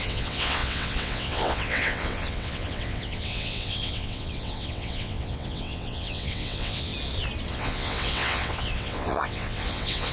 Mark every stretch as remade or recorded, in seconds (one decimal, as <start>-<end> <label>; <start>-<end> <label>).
0.0-6.9 remade; 6.9-7.5 recorded; 7.5-10.1 remade